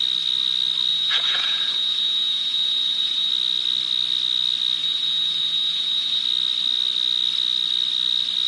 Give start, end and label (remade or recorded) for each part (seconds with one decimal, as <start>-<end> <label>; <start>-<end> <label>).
0.0-0.9 recorded; 0.9-3.3 remade; 3.3-4.8 recorded; 4.8-6.2 remade; 6.2-8.5 recorded